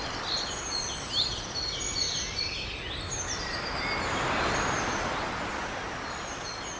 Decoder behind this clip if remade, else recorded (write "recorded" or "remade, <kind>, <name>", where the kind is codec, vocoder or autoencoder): recorded